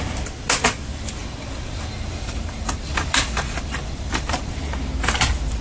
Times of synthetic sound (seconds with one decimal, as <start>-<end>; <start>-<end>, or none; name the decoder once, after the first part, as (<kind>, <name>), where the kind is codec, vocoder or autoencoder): 1.2-4.6 (vocoder, BigVGAN v2)